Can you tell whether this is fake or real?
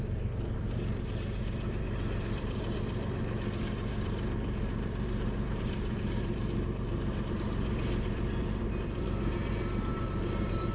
fake